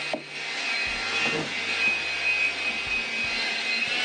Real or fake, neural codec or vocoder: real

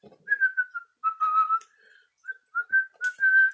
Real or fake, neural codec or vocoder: real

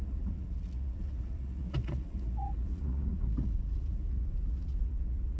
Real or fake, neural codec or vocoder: fake, vocoder, Vocos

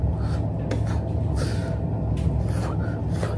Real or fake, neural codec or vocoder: real